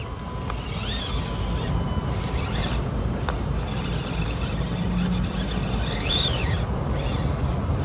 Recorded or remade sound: recorded